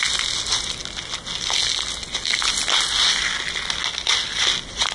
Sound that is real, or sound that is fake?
real